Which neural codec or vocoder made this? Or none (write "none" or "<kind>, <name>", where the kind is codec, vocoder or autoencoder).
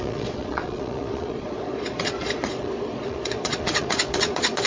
vocoder, Vocos